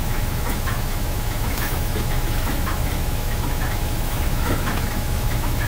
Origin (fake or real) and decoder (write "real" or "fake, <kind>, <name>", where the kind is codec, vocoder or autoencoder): fake, autoencoder, DAC-VAE